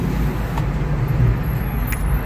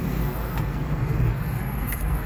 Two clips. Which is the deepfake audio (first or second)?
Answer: second